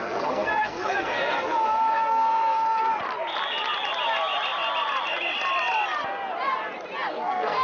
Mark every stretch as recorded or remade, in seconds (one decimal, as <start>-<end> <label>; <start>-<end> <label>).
0.0-2.9 remade; 2.9-7.1 recorded; 7.1-7.6 remade

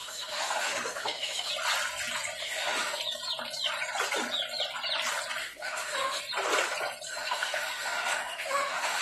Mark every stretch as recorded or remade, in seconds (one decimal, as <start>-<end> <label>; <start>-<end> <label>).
0.0-1.5 remade; 1.5-2.4 recorded; 2.4-3.0 remade; 3.0-5.4 recorded; 5.4-6.2 remade; 6.2-7.1 recorded; 7.1-9.0 remade

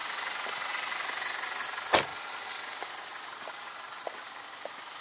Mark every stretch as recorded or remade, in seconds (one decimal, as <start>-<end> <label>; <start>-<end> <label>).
0.0-5.0 recorded